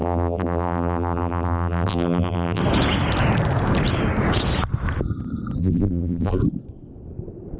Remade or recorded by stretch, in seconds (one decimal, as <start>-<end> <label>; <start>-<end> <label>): 0.0-2.6 remade; 2.6-5.6 recorded; 5.6-6.4 remade; 6.4-7.6 recorded